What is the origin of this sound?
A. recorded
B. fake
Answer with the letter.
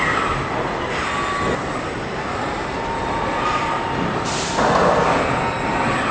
A